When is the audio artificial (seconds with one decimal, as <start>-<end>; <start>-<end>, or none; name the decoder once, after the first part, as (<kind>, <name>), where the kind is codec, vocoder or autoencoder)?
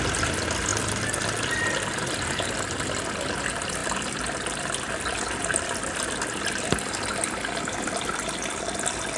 none